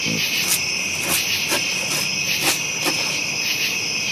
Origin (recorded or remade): recorded